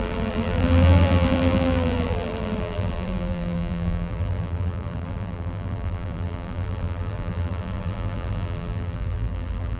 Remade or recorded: remade